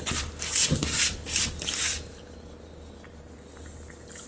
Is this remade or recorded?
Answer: recorded